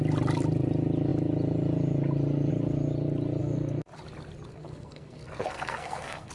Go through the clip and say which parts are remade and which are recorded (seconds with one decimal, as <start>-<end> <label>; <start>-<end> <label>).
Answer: 0.0-3.4 recorded; 3.4-3.9 remade; 3.9-4.5 recorded; 4.5-6.3 remade